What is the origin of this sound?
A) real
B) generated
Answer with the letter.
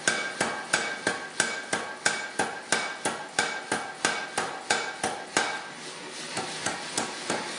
A